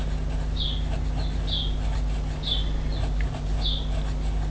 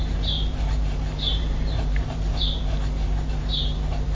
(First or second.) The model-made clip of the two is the second